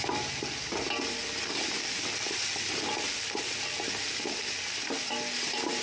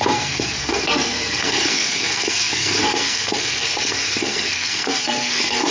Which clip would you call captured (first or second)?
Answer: first